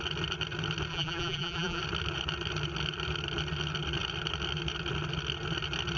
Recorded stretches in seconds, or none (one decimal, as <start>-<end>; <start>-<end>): 0.0-0.9; 1.8-6.0